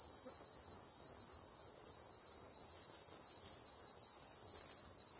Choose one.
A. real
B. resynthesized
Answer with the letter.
A